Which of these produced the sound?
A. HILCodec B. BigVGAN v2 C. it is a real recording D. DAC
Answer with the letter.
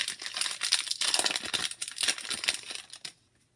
C